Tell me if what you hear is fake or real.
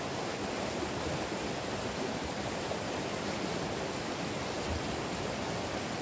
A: real